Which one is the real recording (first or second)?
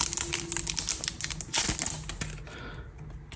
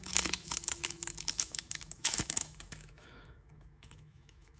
first